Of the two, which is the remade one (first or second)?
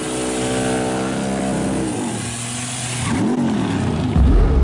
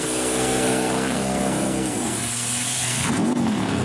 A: second